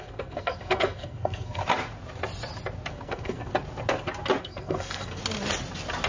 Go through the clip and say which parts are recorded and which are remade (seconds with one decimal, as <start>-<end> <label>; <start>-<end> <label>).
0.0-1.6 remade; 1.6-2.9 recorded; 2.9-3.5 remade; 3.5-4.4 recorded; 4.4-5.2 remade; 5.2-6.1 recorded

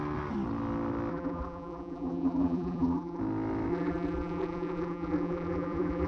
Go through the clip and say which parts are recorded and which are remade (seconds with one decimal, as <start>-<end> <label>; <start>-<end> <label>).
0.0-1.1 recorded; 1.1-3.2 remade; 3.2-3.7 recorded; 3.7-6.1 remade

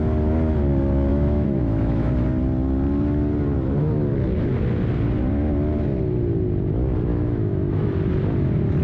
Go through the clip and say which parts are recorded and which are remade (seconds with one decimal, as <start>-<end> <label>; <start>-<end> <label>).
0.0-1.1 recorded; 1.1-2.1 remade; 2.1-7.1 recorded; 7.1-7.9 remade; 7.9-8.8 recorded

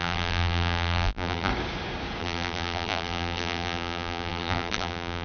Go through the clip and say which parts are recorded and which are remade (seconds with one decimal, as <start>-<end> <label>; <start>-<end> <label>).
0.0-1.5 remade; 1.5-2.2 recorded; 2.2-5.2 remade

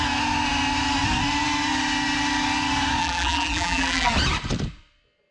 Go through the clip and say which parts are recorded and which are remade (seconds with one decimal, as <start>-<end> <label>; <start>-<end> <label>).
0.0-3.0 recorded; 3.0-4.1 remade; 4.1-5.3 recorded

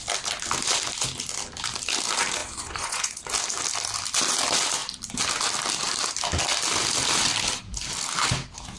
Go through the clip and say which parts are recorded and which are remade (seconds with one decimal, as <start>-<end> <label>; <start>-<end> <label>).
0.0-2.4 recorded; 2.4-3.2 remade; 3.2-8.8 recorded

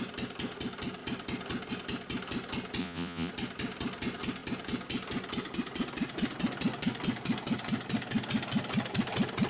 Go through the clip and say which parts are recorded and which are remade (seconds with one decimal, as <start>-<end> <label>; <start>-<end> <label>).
0.0-2.8 recorded; 2.8-3.3 remade; 3.3-9.5 recorded